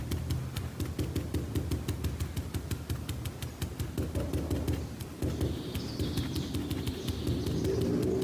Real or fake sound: real